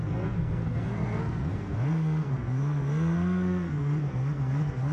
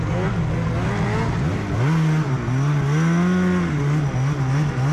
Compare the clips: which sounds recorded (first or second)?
second